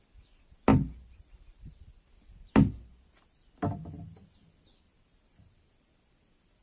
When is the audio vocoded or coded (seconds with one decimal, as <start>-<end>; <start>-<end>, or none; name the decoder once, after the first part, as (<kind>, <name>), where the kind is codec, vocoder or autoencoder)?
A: none